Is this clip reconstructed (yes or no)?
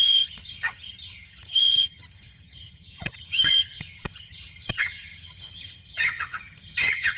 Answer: yes